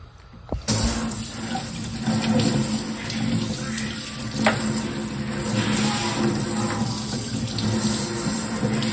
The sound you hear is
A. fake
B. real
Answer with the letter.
B